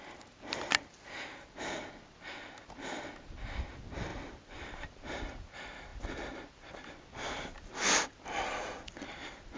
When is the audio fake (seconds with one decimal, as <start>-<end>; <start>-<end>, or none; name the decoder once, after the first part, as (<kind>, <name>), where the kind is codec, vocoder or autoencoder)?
none